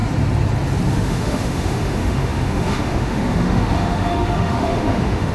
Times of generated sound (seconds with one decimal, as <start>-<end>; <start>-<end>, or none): 0.9-5.3